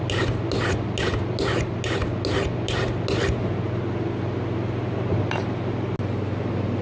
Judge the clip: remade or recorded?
recorded